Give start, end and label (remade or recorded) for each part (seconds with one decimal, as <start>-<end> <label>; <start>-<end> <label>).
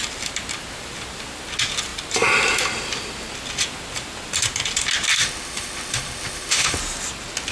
0.0-5.2 recorded; 5.2-6.8 remade; 6.8-7.5 recorded